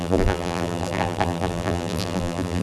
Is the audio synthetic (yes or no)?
yes